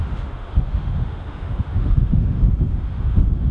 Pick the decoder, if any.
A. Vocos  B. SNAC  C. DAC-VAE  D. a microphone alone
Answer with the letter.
C